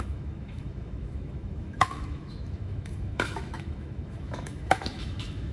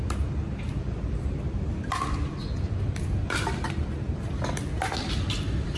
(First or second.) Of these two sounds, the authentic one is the second